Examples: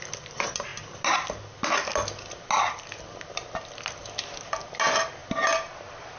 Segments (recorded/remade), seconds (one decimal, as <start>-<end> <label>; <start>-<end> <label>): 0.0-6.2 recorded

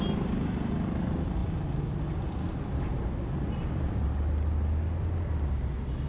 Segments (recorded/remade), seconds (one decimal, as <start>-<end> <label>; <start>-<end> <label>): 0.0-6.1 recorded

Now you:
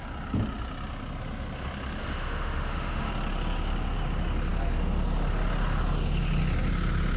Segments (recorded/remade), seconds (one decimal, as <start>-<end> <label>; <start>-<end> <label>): 0.0-2.0 recorded; 2.0-3.1 remade; 3.1-7.2 recorded

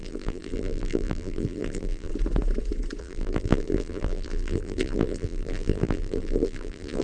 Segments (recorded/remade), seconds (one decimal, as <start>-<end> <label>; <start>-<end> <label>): 0.0-2.1 remade; 2.1-3.0 recorded; 3.0-7.0 remade

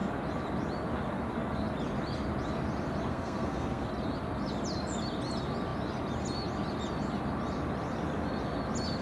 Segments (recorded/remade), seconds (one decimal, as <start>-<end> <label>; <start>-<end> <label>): 0.0-3.1 recorded; 3.1-3.9 remade; 3.9-9.0 recorded

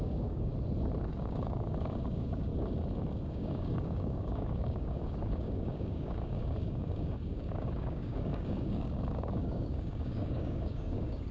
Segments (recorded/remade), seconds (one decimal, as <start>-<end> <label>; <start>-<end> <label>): 0.0-0.5 remade; 0.5-1.0 recorded; 1.0-2.5 remade; 2.5-3.3 recorded; 3.3-11.3 remade

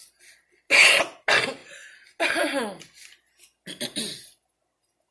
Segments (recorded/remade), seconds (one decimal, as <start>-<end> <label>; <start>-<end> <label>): 0.0-5.1 recorded

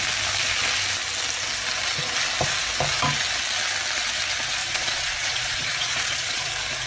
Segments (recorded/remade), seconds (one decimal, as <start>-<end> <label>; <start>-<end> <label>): 0.0-4.6 recorded; 4.6-6.5 remade; 6.5-6.9 recorded